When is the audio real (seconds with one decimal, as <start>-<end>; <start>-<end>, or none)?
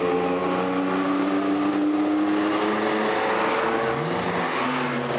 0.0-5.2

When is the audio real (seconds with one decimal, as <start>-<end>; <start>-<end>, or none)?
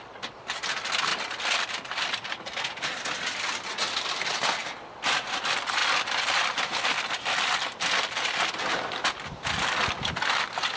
0.0-10.8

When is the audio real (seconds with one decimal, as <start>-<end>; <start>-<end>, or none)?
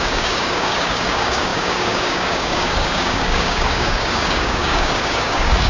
none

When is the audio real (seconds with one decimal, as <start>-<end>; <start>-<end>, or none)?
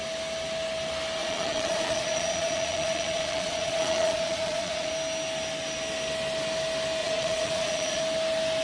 0.0-1.2; 4.9-7.0; 8.0-8.6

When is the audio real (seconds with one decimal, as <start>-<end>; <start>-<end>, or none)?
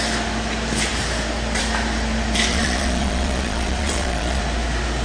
0.0-2.5; 4.4-5.0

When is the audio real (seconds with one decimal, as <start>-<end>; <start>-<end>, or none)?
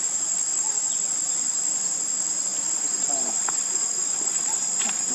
0.0-2.5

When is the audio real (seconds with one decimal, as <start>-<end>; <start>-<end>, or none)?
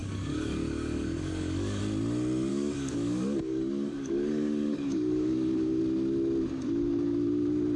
1.8-2.5; 5.8-7.8